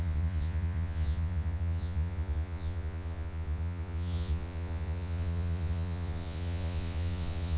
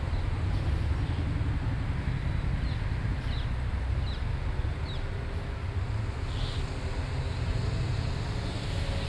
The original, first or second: second